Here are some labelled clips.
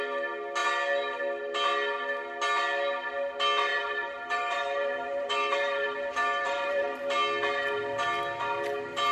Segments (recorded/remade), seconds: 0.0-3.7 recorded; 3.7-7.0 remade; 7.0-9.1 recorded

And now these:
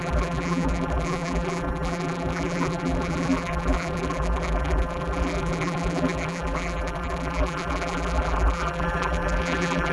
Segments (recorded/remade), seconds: 0.0-9.9 remade

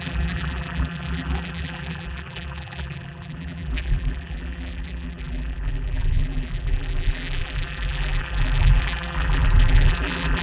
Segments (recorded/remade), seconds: 0.0-10.4 remade

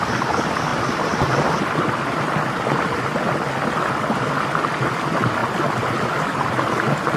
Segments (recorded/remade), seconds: 0.0-0.7 recorded; 0.7-1.6 remade; 1.6-7.2 recorded

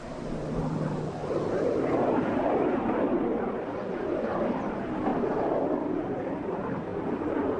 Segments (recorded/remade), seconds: 0.0-7.6 remade

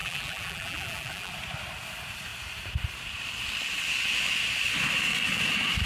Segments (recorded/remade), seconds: 0.0-1.3 remade; 1.3-5.9 recorded